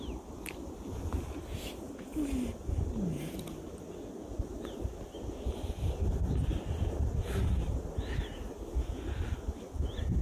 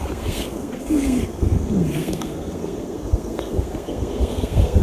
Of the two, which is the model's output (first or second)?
second